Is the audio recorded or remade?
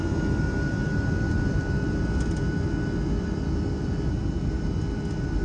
recorded